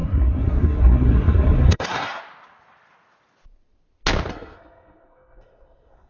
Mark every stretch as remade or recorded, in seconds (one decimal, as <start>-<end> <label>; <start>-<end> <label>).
0.0-2.2 remade; 2.2-4.3 recorded; 4.3-6.1 remade